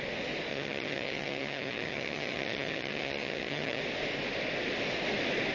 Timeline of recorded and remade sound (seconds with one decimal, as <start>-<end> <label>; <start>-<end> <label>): 0.0-0.5 recorded; 0.5-3.8 remade; 3.8-5.5 recorded